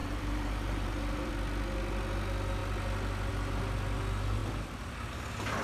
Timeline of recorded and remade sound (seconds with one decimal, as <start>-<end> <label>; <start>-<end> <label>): 0.0-1.3 remade; 1.3-5.6 recorded